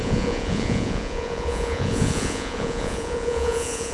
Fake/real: fake